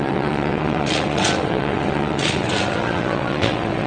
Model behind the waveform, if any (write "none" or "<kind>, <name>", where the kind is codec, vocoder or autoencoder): vocoder, WaveNeXt